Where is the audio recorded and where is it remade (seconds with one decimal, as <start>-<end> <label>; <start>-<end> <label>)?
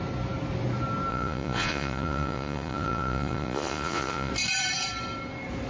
0.0-1.1 recorded; 1.1-4.3 remade; 4.3-5.7 recorded